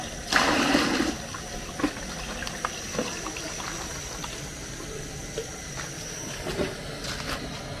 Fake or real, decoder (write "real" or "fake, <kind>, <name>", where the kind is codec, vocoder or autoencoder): real